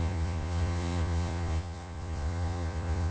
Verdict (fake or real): fake